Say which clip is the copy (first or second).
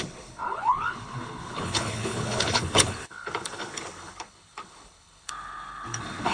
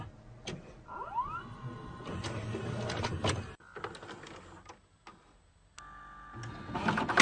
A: first